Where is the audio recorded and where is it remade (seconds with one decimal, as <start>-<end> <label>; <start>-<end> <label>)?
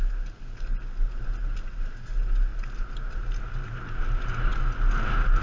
0.0-5.4 recorded